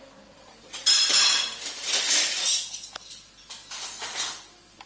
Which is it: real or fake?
real